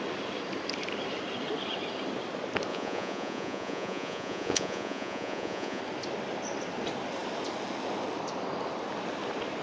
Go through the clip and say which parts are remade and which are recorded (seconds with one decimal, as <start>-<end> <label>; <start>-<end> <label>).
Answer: 0.0-2.7 recorded; 2.7-5.8 remade; 5.8-9.6 recorded